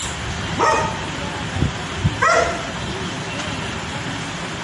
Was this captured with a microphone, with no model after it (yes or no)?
yes